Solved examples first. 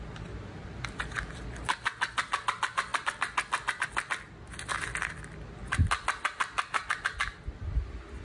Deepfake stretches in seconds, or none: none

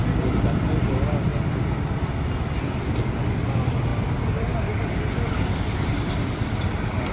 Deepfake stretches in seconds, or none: none

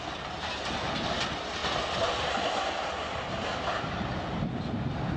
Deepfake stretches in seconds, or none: none